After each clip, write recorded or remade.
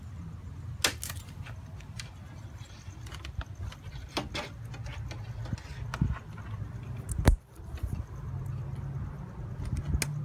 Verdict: recorded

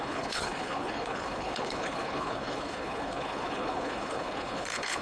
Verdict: remade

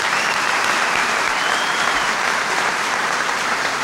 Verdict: remade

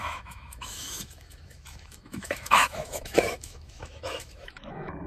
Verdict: remade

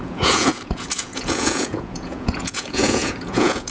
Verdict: remade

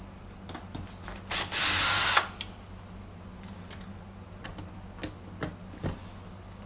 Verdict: recorded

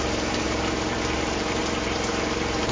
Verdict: remade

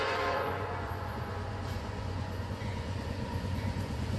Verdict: remade